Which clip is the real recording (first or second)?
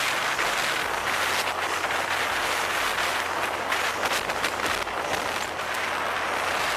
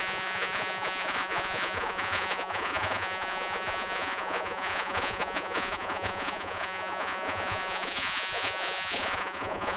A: first